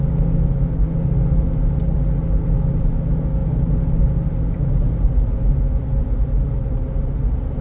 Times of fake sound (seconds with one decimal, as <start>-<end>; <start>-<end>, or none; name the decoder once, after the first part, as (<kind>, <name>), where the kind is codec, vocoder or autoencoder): none